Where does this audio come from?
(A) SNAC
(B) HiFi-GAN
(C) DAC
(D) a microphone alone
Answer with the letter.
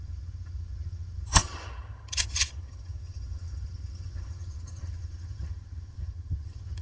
B